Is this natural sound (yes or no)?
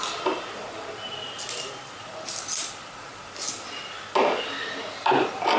yes